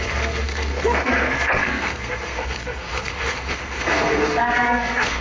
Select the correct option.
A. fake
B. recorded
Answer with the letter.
A